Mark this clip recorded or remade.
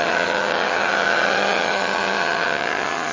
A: remade